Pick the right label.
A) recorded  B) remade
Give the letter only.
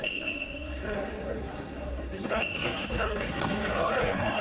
B